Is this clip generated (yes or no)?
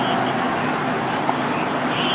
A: no